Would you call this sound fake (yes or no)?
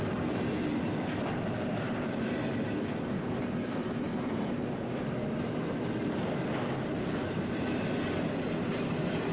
no